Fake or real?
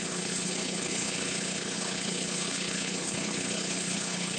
fake